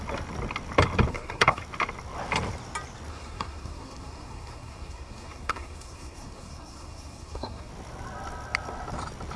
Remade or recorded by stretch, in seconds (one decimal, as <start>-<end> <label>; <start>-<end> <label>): 0.0-1.1 recorded; 1.1-1.6 remade; 1.6-3.1 recorded; 3.1-7.7 remade; 7.7-9.4 recorded